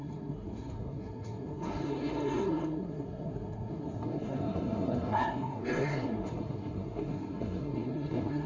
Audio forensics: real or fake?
fake